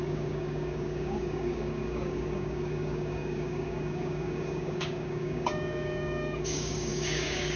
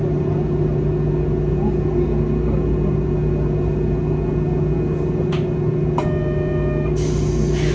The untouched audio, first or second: second